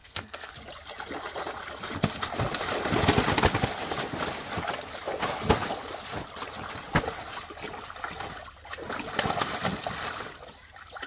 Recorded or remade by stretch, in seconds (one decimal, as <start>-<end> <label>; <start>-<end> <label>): 0.0-0.5 remade; 0.5-11.1 recorded